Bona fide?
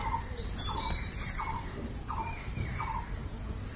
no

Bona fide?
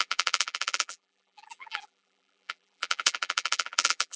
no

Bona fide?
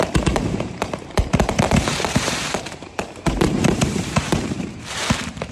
no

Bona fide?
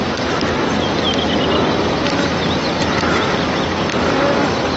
no